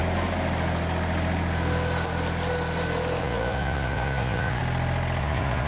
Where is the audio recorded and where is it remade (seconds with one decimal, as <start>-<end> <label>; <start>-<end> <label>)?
0.0-3.2 recorded; 3.2-4.6 remade; 4.6-5.2 recorded; 5.2-5.7 remade